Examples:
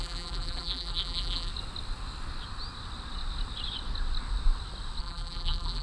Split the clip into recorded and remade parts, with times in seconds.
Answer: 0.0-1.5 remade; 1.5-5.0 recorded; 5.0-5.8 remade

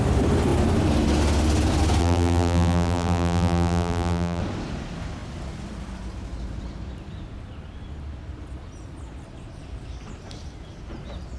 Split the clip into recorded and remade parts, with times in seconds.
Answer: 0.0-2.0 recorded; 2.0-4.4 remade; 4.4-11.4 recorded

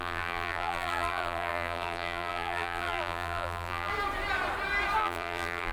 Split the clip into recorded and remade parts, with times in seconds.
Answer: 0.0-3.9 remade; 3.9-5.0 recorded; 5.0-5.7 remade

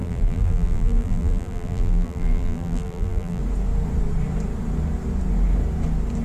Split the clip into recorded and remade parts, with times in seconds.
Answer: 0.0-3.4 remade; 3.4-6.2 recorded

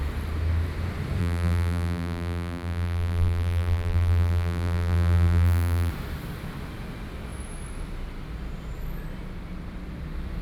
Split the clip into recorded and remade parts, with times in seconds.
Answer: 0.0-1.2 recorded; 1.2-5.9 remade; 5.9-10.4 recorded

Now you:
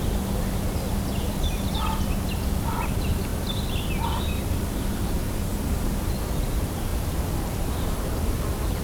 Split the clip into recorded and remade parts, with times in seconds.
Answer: 0.0-3.3 remade; 3.3-4.2 recorded; 4.2-5.5 remade; 5.5-6.3 recorded; 6.3-6.9 remade; 6.9-7.7 recorded; 7.7-8.8 remade